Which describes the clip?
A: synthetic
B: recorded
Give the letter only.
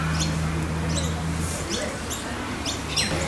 B